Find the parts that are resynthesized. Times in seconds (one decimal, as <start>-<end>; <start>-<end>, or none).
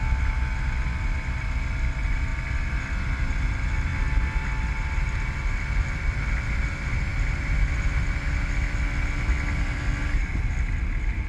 none